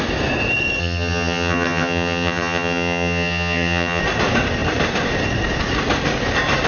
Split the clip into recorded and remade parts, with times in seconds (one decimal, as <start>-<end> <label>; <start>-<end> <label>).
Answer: 0.0-0.8 recorded; 0.8-4.0 remade; 4.0-6.7 recorded